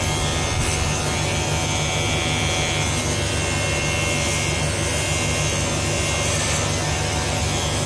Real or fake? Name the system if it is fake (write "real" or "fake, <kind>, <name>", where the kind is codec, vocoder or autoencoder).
real